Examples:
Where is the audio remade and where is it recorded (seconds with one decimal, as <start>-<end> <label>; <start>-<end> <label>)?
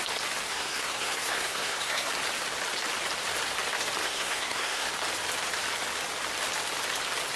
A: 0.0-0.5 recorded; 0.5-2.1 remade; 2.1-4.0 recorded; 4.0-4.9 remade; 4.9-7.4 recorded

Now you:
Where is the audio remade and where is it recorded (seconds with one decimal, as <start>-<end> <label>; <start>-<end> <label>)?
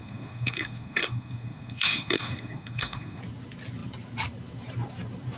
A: 0.0-3.2 remade; 3.2-5.4 recorded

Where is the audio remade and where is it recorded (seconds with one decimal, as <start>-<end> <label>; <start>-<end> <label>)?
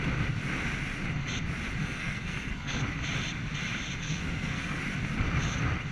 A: 0.0-1.8 recorded; 1.8-2.8 remade; 2.8-4.0 recorded; 4.0-4.8 remade; 4.8-5.9 recorded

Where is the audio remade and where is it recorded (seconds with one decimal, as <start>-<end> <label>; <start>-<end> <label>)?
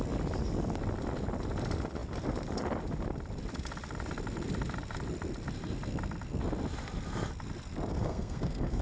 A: 0.0-7.9 recorded; 7.9-8.8 remade